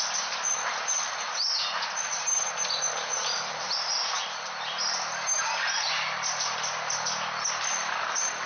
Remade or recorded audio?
recorded